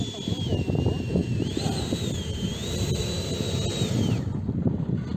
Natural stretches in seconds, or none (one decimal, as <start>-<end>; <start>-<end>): 0.0-5.2